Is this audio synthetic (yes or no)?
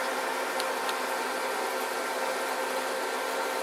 no